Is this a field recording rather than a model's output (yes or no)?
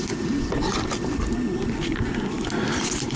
yes